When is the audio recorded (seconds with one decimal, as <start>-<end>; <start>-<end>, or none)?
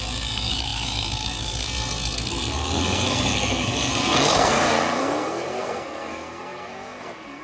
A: none